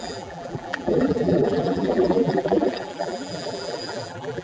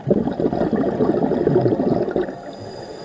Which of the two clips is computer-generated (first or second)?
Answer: first